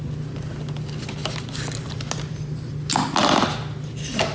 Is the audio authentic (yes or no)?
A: yes